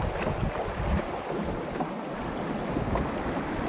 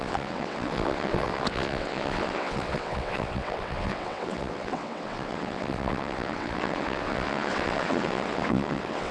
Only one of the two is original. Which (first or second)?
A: first